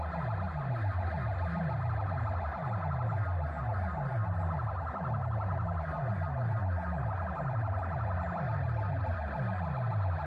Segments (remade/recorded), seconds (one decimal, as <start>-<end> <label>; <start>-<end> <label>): 0.0-10.3 recorded